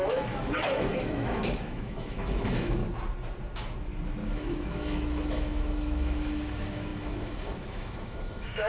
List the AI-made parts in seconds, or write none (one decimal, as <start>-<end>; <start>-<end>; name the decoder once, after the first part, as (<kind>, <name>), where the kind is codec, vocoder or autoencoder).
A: 0.0-2.8 (autoencoder, DAC-VAE); 4.3-8.7